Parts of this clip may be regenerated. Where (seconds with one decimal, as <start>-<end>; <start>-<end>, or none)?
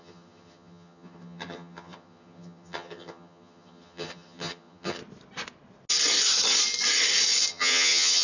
0.0-5.0; 7.5-8.2